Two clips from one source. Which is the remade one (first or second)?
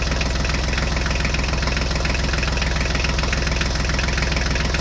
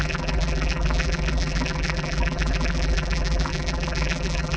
second